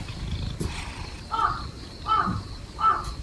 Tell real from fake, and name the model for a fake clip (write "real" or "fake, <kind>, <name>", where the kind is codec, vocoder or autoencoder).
fake, vocoder, BigVGAN v2